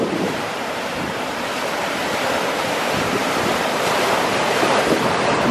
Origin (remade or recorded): remade